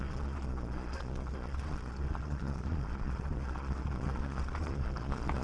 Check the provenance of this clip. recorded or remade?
remade